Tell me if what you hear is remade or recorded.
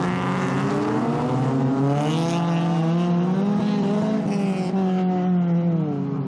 recorded